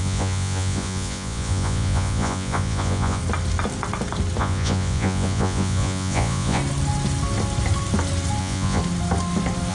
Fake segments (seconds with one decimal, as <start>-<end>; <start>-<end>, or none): 0.0-3.2; 4.4-6.6; 8.4-8.8